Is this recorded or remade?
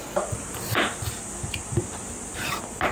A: recorded